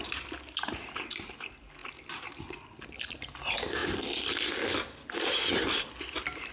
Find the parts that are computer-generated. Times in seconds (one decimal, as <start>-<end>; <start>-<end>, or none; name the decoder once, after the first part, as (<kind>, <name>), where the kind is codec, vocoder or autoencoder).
none